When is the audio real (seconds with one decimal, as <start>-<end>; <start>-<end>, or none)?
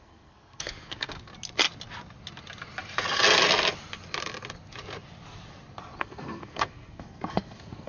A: 1.3-6.0